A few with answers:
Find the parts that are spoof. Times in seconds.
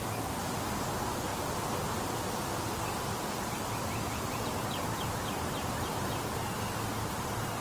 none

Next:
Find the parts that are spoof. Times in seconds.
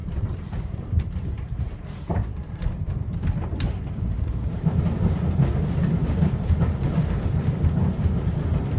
0.0-4.8 (vocoder, BigVGAN v2); 6.0-6.7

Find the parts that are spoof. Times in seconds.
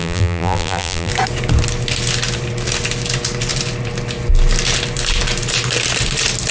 0.0-1.1 (vocoder, BigVGAN v2)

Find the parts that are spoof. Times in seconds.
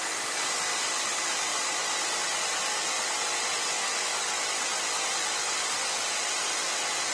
none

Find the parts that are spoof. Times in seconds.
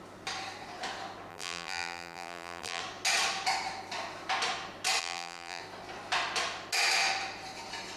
1.3-2.8 (vocoder, BigVGAN v2); 5.0-5.6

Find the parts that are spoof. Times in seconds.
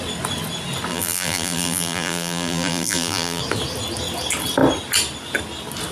0.9-3.4 (vocoder, BigVGAN v2)